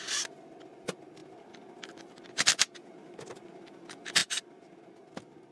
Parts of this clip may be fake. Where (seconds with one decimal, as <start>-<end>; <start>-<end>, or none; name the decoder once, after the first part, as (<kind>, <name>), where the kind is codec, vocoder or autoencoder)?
none